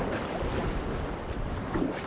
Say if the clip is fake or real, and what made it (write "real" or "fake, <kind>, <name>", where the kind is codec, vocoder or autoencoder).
real